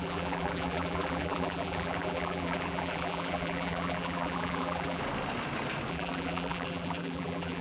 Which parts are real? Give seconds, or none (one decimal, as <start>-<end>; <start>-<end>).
5.0-5.9